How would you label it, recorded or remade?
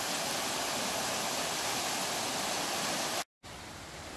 recorded